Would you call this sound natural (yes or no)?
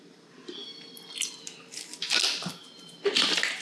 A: yes